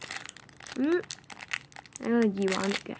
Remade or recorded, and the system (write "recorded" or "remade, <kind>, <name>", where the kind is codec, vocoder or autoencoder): recorded